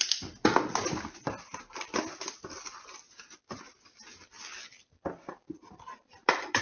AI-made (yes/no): yes